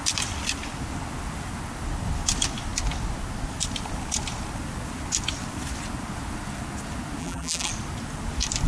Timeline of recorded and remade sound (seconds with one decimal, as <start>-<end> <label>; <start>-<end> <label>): 0.0-7.2 recorded; 7.2-7.7 remade; 7.7-8.7 recorded